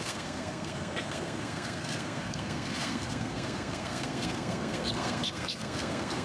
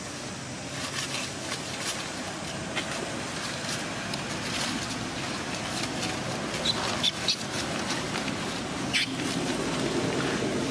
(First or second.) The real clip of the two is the second